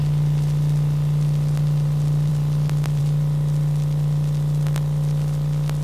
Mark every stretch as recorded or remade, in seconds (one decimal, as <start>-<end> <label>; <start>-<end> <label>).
0.0-5.8 recorded